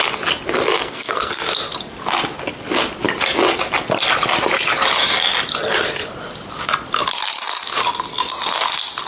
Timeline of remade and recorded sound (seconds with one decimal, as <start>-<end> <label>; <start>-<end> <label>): 0.0-0.8 recorded; 0.8-1.3 remade; 1.3-9.1 recorded